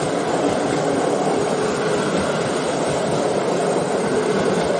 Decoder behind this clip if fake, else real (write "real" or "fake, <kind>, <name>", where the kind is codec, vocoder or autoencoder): real